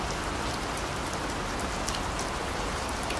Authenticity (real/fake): real